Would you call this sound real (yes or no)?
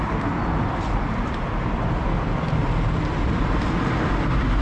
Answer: no